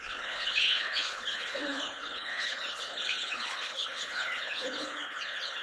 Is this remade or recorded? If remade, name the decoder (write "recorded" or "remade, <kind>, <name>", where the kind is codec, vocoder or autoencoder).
remade, codec, HILCodec